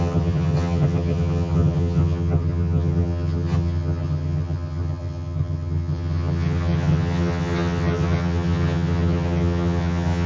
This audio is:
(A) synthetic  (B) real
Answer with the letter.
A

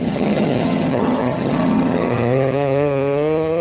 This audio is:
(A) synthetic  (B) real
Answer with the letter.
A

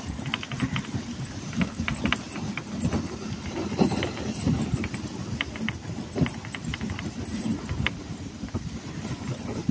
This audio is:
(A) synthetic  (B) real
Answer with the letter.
B